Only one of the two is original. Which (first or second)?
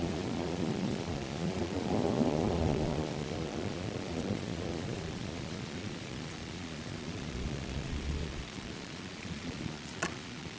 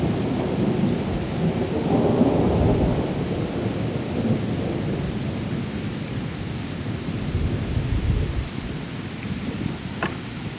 second